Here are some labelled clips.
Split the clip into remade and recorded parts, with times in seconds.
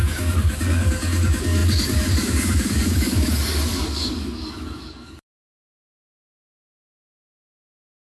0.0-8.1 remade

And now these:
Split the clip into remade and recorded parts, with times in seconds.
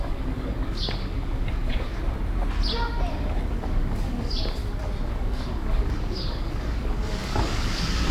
0.0-2.0 remade; 2.0-3.1 recorded; 3.1-4.6 remade; 4.6-5.1 recorded; 5.1-8.1 remade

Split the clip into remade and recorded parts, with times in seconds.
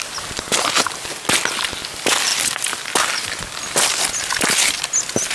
0.0-5.3 recorded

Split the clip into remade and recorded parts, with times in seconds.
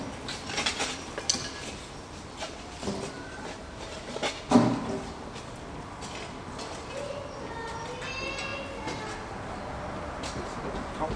0.0-11.2 recorded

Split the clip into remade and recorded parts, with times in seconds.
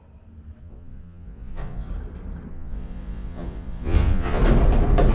0.0-0.6 recorded; 0.6-1.9 remade; 1.9-2.5 recorded; 2.5-4.4 remade; 4.4-5.1 recorded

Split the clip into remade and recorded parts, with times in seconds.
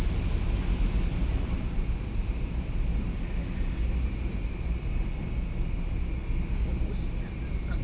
0.0-2.4 recorded; 2.4-2.9 remade; 2.9-4.0 recorded; 4.0-6.2 remade; 6.2-7.2 recorded; 7.2-7.8 remade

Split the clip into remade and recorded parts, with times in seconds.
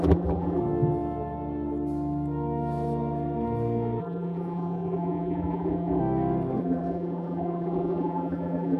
0.0-0.6 remade; 0.6-4.0 recorded; 4.0-6.0 remade; 6.0-6.6 recorded; 6.6-8.8 remade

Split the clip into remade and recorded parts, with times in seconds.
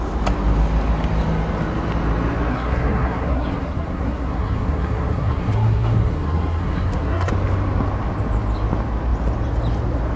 0.0-2.5 recorded; 2.5-7.3 remade; 7.3-10.2 recorded